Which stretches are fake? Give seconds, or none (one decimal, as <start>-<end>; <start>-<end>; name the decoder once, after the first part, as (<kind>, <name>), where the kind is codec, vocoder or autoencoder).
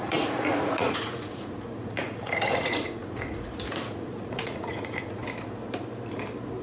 0.0-5.2 (vocoder, Vocos)